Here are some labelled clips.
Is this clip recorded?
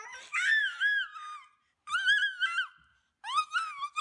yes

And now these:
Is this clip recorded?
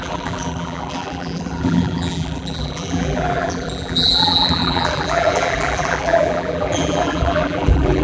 no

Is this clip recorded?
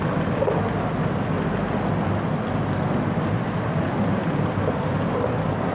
yes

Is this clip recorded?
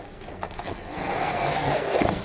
no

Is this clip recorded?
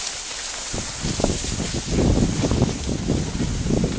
yes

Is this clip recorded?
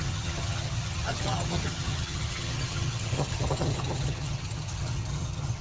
no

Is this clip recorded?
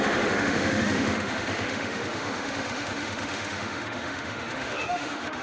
no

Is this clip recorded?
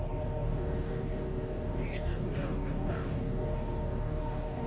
no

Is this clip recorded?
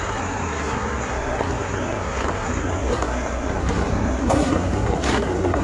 no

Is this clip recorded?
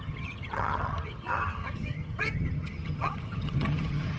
no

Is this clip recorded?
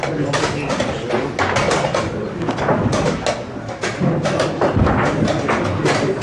yes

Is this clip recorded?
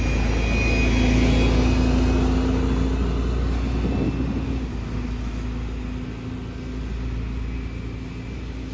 yes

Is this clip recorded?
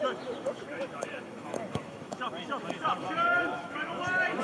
no